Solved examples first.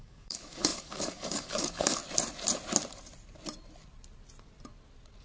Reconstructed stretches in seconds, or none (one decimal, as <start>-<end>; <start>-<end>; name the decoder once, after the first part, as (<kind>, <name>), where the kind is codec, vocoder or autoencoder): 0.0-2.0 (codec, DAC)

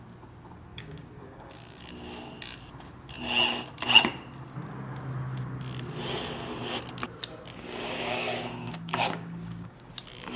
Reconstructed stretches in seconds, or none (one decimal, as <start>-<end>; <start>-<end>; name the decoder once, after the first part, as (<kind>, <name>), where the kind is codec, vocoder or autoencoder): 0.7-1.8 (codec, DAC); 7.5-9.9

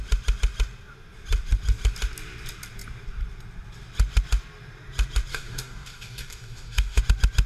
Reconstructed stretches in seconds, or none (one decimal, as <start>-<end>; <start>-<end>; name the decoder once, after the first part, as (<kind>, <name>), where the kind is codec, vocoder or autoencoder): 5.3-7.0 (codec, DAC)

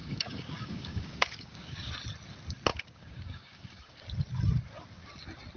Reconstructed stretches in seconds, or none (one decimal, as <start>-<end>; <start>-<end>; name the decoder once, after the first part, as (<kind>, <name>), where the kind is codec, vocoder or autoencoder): 0.0-1.9 (codec, DAC); 2.7-4.0

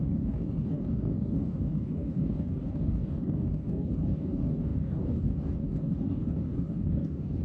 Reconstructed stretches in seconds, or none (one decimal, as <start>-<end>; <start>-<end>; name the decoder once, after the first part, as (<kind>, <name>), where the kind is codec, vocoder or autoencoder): 0.0-7.4 (codec, DAC)

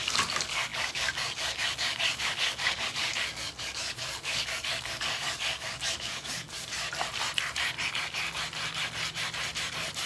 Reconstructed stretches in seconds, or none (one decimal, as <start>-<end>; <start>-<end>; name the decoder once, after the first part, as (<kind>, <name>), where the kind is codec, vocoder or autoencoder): 0.0-6.7 (codec, DAC)